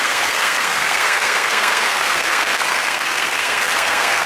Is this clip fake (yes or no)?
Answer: yes